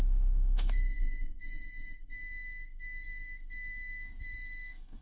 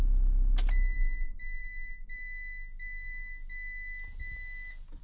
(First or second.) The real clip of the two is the second